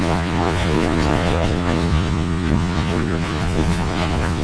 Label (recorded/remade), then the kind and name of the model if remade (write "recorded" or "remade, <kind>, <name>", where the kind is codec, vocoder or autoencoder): remade, vocoder, Vocos